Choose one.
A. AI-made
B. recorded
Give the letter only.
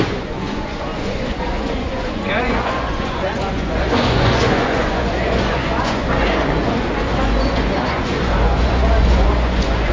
A